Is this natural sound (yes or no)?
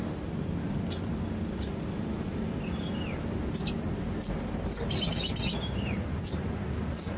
yes